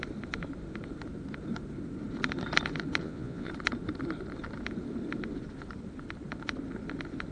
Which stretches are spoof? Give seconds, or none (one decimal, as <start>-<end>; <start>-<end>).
3.0-3.5